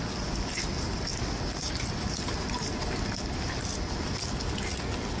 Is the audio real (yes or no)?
yes